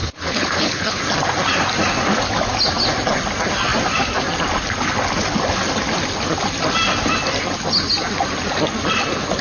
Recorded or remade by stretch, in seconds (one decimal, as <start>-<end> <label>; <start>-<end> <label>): 0.0-1.0 remade; 1.0-9.4 recorded